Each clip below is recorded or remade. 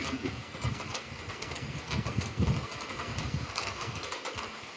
remade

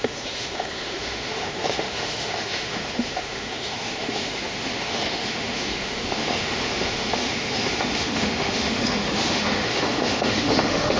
remade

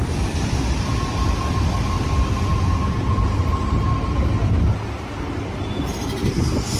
recorded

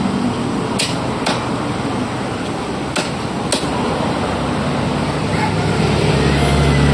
recorded